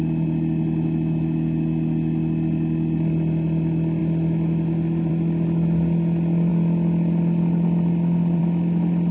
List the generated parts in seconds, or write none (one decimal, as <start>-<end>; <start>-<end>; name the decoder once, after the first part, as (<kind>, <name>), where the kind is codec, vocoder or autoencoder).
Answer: none